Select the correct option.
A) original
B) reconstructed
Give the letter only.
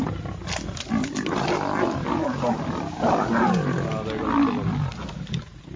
A